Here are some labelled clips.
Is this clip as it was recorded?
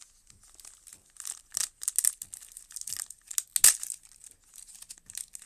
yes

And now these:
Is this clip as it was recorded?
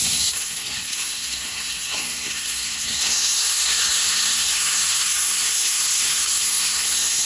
no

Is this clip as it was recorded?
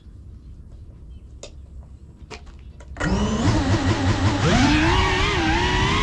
yes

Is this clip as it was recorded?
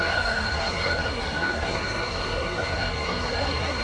no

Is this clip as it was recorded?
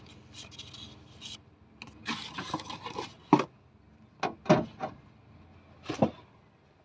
yes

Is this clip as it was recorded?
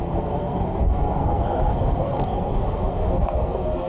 no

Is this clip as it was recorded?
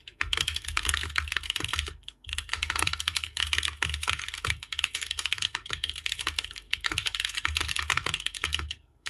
no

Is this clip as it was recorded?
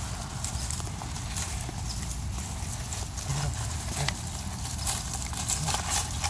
yes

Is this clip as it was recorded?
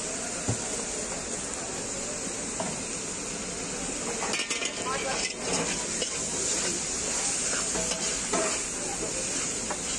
yes